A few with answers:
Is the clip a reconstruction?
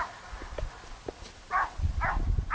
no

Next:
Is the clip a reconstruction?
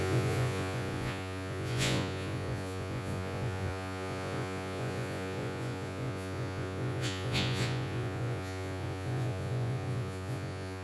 yes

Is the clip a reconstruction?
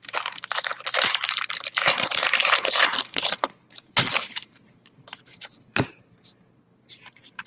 yes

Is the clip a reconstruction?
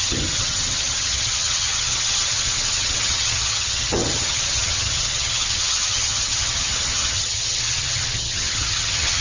yes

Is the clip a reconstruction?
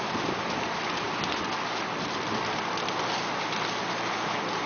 no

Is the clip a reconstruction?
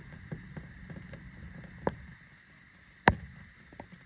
yes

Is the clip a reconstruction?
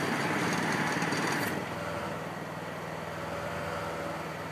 no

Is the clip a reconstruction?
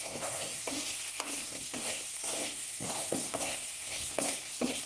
yes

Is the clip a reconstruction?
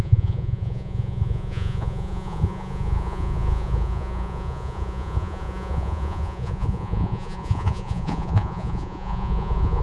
yes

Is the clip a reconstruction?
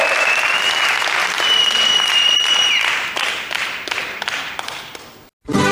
no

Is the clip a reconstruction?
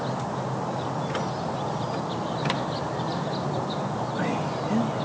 no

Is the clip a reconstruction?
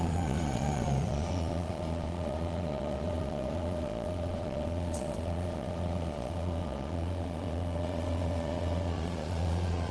yes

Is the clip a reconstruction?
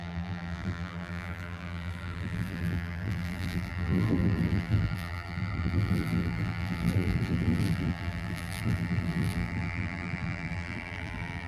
yes